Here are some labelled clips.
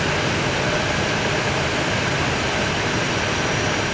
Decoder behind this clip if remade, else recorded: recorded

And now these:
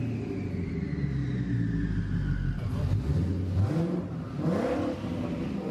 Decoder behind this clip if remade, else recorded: recorded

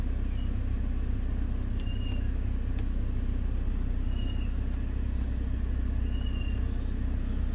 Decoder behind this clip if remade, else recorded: recorded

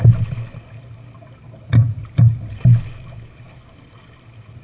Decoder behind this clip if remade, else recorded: recorded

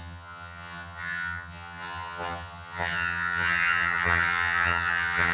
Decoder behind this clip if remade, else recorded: remade, vocoder, HiFi-GAN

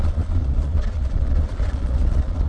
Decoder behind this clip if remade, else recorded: remade, vocoder, Vocos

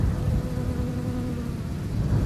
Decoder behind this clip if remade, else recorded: recorded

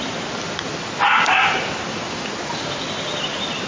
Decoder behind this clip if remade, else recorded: recorded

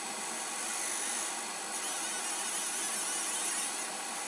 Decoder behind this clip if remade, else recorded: recorded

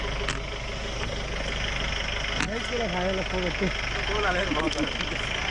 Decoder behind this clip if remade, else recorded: recorded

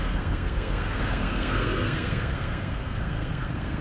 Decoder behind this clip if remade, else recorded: remade, codec, SNAC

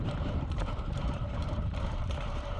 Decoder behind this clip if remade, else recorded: remade, vocoder, BigVGAN v2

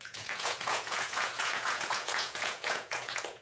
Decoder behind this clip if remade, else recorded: remade, vocoder, Vocos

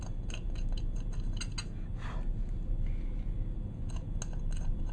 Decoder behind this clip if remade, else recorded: recorded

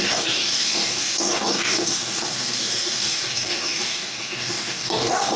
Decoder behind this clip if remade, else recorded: remade, codec, DAC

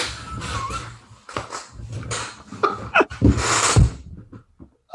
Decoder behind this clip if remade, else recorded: recorded